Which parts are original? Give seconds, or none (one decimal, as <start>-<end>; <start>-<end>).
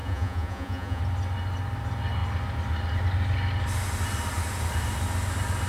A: 1.0-5.7